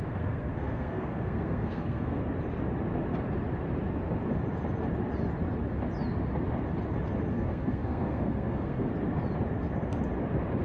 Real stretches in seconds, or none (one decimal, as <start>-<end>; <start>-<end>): 2.2-7.3; 8.9-10.6